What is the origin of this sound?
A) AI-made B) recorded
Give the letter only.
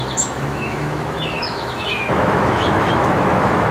A